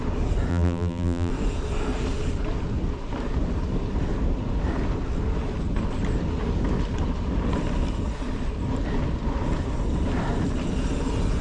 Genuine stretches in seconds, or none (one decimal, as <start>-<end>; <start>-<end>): 0.0-0.5; 1.3-11.4

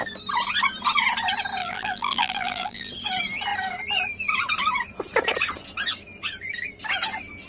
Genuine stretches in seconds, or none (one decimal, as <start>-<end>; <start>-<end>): 0.0-1.6; 2.9-7.5

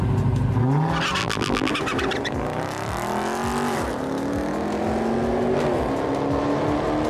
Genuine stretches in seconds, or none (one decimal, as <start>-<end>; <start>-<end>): 0.0-1.2; 1.7-7.1

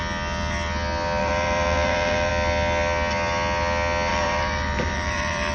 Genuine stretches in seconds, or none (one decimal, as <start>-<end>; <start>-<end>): 0.0-1.2; 2.3-4.1